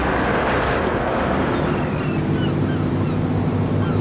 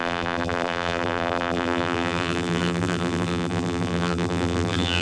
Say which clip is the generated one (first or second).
second